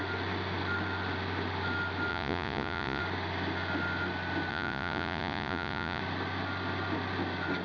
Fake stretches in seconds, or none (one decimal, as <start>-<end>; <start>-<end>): 2.1-3.0; 4.5-6.0